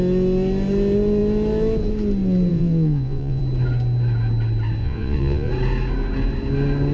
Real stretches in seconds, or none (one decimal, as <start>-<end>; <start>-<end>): 0.0-2.5; 3.4-4.8; 5.5-6.9